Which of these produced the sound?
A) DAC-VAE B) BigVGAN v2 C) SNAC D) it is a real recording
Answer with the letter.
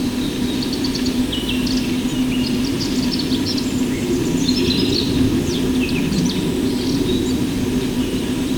D